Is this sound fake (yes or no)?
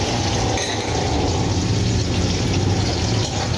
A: no